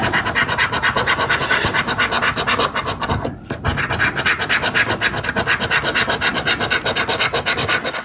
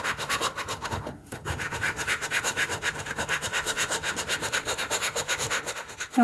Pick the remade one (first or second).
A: second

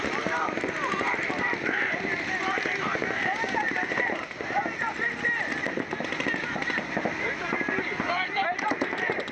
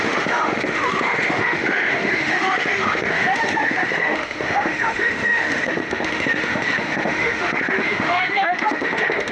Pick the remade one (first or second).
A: second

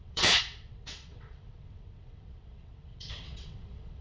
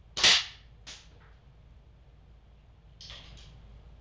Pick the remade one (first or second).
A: first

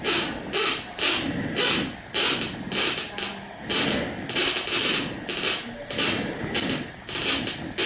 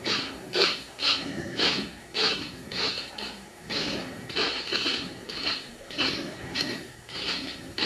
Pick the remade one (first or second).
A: second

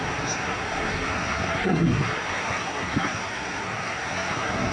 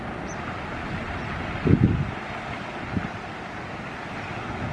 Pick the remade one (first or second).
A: first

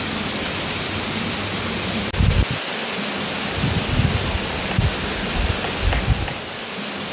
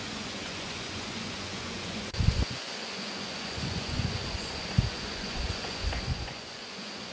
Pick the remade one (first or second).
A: second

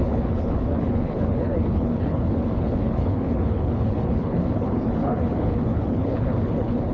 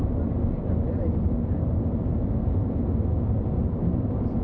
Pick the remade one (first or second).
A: first